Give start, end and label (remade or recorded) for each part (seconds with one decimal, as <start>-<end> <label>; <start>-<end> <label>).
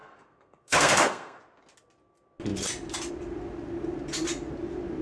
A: 0.0-1.4 remade; 1.4-5.0 recorded